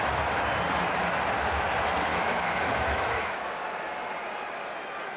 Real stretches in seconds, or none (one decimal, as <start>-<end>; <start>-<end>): 0.0-2.1; 3.4-5.2